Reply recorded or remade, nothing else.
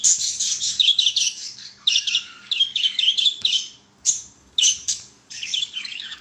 remade